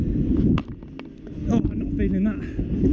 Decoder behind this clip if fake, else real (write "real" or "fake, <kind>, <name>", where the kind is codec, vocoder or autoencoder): real